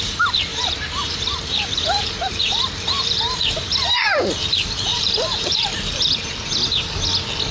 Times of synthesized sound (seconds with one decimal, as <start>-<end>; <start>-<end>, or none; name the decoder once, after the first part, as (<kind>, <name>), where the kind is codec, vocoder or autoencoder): 0.0-5.7 (vocoder, BigVGAN v2)